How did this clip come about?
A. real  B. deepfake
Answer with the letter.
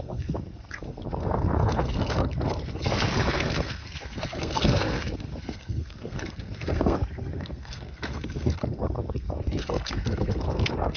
B